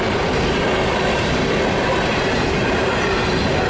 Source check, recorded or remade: recorded